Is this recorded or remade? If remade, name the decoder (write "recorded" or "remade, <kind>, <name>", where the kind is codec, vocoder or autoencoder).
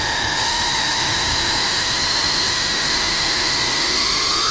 remade, autoencoder, DAC-VAE